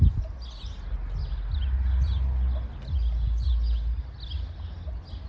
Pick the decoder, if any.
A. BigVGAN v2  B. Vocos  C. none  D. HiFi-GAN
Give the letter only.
C